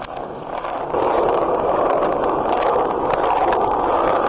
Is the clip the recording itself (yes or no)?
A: yes